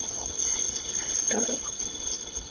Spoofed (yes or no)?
yes